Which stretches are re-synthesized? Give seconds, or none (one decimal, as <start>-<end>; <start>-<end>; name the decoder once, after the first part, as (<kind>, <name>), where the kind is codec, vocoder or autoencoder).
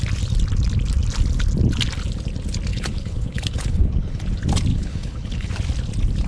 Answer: 2.7-4.2 (codec, HILCodec); 4.7-5.5